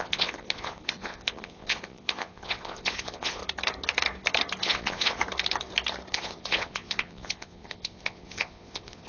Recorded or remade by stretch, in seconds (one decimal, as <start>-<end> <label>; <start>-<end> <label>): 0.0-3.4 remade; 3.4-4.6 recorded; 4.6-5.2 remade; 5.2-6.1 recorded; 6.1-9.1 remade